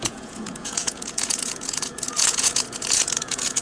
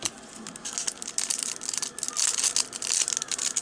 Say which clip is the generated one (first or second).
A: first